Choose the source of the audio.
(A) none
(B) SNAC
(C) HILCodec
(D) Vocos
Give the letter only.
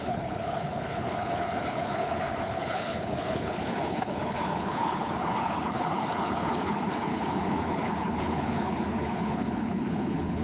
C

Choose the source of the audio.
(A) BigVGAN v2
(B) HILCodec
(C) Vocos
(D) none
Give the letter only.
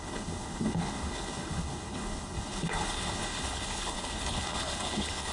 B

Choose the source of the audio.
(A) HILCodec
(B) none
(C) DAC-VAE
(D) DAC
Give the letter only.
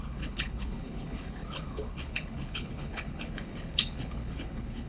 A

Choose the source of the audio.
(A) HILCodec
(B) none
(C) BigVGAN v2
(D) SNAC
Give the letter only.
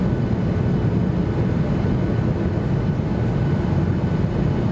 B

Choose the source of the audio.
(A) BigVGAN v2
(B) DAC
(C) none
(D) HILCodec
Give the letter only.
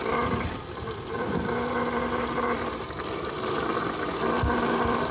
C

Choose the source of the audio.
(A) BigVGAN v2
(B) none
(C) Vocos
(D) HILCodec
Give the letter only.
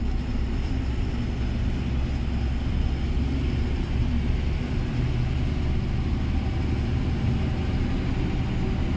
B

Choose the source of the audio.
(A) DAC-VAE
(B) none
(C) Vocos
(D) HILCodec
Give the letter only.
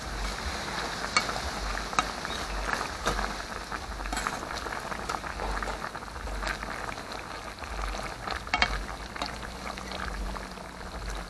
B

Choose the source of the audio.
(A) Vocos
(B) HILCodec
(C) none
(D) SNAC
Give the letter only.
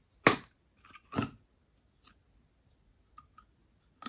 C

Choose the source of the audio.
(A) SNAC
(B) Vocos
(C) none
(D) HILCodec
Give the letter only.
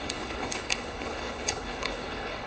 D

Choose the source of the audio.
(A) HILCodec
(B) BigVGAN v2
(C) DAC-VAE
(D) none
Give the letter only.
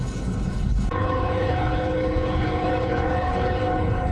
A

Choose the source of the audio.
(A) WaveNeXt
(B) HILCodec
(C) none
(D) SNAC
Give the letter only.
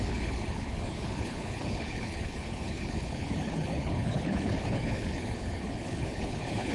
B